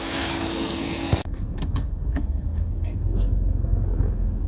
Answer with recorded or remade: remade